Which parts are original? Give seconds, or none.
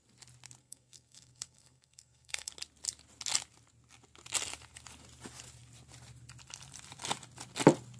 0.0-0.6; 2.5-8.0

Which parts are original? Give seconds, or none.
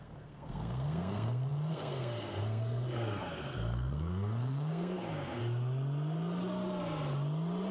5.4-7.7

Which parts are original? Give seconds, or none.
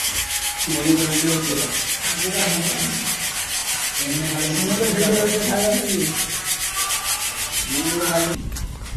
0.6-9.0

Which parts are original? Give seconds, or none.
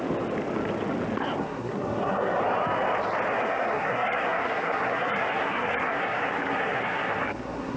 0.0-1.4; 2.4-3.3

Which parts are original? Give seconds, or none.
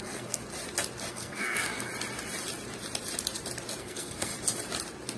0.4-1.1; 1.9-3.8; 4.3-5.2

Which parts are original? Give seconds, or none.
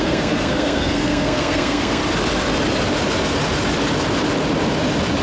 2.0-5.2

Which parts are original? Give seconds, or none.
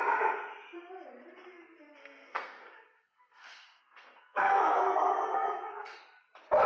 0.0-2.0; 6.0-6.7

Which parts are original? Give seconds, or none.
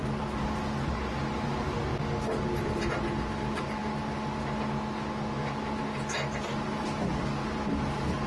0.0-8.3